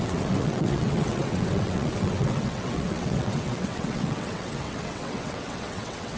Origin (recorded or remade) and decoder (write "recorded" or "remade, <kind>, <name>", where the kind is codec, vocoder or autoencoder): remade, vocoder, WaveNeXt